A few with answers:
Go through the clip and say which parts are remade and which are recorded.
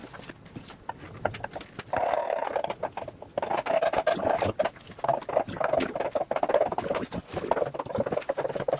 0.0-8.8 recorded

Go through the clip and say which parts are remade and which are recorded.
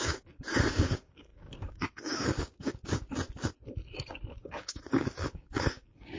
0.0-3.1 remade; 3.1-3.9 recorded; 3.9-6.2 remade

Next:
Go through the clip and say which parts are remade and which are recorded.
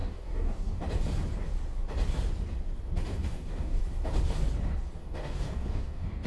0.0-0.8 remade; 0.8-3.1 recorded; 3.1-3.8 remade; 3.8-5.0 recorded; 5.0-6.3 remade